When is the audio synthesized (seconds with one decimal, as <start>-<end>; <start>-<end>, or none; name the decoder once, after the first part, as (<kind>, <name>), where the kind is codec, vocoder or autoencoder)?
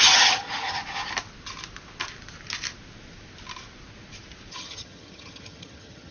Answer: 0.0-0.8 (vocoder, HiFi-GAN); 4.5-6.1